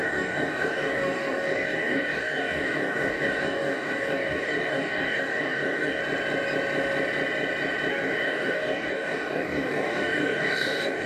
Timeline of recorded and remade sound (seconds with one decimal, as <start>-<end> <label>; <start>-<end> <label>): 0.0-6.0 remade; 6.0-7.9 recorded; 7.9-11.1 remade